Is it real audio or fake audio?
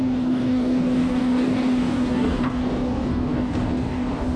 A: fake